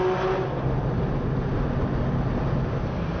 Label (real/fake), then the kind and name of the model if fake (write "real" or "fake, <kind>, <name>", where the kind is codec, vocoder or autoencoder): real